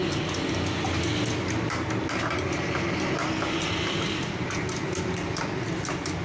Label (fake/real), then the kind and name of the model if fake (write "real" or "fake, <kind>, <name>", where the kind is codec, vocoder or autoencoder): real